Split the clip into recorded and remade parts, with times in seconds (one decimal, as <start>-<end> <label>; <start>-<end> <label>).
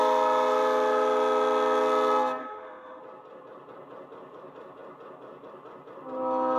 0.0-2.4 recorded; 2.4-3.0 remade; 3.0-6.6 recorded